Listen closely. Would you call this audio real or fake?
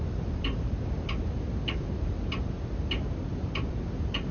real